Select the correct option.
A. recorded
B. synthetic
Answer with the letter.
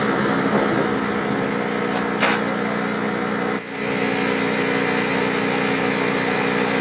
A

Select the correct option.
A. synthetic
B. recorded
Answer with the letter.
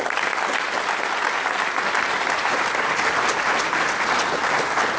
B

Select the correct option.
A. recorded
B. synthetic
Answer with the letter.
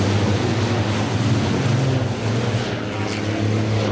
A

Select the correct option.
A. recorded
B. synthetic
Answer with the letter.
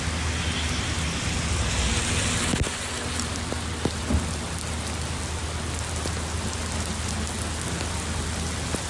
A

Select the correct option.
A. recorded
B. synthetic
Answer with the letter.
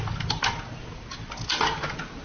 A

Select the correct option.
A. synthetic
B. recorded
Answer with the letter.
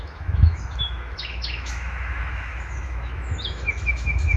A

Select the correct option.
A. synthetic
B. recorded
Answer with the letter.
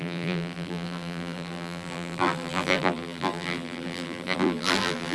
A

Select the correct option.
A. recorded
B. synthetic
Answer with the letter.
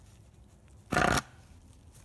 A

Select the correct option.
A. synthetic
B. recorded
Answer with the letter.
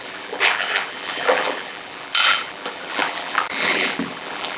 A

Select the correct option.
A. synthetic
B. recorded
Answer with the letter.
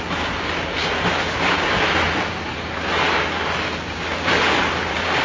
B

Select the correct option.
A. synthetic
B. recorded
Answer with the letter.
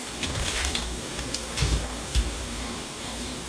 A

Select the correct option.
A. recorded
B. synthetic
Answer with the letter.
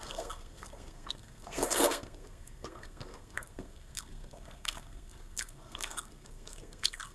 B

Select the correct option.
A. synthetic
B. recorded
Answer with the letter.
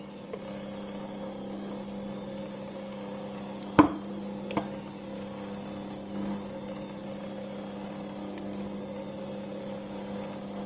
B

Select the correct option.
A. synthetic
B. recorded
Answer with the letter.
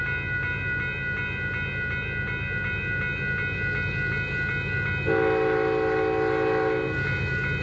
B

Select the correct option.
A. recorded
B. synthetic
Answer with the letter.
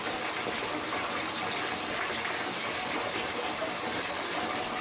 A